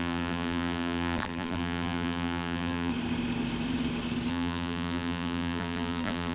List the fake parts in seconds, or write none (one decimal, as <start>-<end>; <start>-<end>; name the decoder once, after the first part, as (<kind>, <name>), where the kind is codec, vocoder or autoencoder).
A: 0.0-2.9 (vocoder, BigVGAN v2); 4.3-6.3